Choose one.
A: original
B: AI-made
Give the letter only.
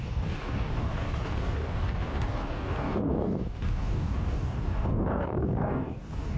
B